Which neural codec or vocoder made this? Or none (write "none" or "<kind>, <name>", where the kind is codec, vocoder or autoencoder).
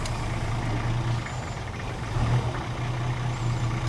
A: none